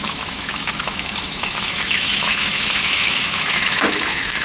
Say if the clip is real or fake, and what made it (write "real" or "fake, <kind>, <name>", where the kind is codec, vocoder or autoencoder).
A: fake, autoencoder, DAC-VAE